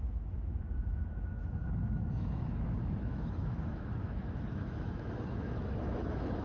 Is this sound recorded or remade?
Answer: remade